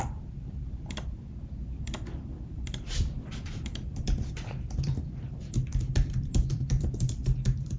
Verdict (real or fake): fake